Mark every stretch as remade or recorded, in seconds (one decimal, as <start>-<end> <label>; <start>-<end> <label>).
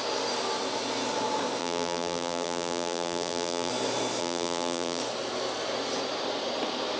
0.0-1.6 recorded; 1.6-3.7 remade; 3.7-4.2 recorded; 4.2-5.0 remade; 5.0-7.0 recorded